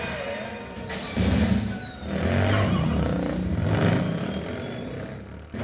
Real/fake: real